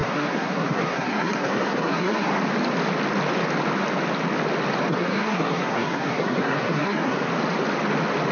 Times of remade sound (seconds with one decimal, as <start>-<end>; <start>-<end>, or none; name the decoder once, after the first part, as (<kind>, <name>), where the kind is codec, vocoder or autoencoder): 0.0-2.3 (codec, SNAC); 4.9-7.3